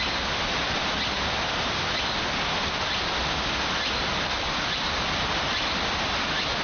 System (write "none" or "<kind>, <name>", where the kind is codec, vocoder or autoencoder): none